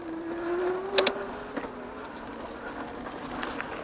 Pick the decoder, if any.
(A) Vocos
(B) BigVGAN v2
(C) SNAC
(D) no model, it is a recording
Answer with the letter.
D